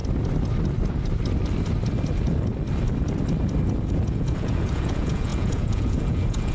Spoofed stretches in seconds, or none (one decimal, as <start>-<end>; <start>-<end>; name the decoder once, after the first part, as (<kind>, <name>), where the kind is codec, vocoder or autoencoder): 3.9-6.5 (vocoder, Vocos)